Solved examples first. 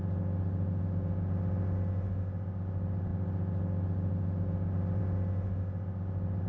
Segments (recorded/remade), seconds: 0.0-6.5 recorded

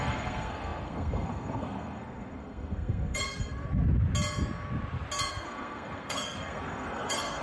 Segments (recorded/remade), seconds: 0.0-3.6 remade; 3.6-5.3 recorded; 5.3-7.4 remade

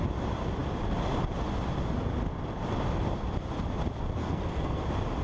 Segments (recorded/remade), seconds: 0.0-4.2 recorded; 4.2-4.8 remade; 4.8-5.2 recorded